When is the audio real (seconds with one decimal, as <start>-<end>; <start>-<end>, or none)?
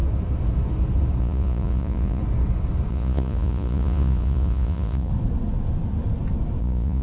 0.0-1.2; 2.2-2.9; 5.1-6.6